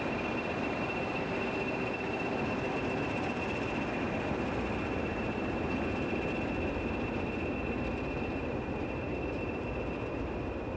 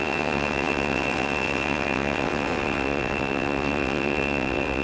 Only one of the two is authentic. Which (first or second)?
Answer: first